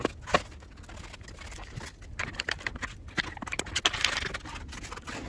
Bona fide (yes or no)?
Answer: yes